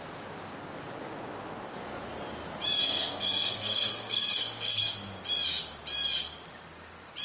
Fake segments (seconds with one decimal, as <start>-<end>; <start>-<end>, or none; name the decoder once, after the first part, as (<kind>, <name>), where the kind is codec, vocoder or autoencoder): 2.8-4.8 (codec, SNAC)